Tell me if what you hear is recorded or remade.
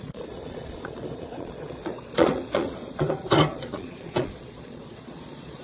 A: remade